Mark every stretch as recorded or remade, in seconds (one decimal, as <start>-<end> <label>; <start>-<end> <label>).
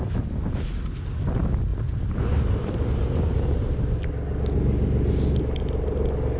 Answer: 0.0-1.7 recorded; 1.7-3.2 remade; 3.2-6.4 recorded